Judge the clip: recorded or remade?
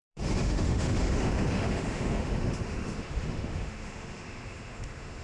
remade